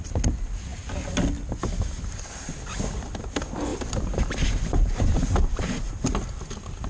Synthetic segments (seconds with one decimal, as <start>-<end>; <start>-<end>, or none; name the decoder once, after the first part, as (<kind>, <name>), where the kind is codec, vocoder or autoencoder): 3.7-5.9 (vocoder, BigVGAN v2)